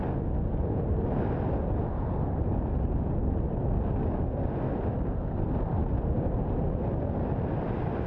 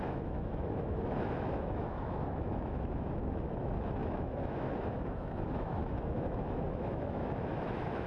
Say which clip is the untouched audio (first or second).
first